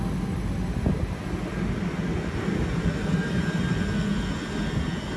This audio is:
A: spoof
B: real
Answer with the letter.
B